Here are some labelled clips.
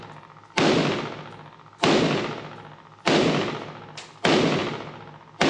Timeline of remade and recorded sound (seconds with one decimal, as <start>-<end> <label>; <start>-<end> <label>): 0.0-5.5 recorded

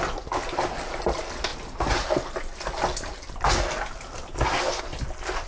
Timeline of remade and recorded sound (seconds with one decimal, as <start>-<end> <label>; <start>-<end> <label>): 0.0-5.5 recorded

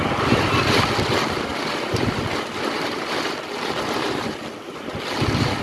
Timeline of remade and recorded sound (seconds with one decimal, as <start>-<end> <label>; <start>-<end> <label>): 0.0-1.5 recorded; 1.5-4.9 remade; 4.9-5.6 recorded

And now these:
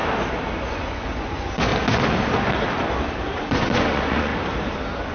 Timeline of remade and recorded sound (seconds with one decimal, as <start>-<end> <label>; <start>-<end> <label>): 0.0-0.7 recorded; 0.7-1.7 remade; 1.7-3.4 recorded; 3.4-4.3 remade; 4.3-5.1 recorded